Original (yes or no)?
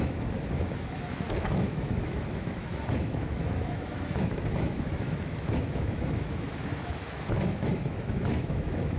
no